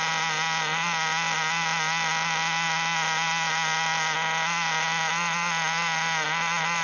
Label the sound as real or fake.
real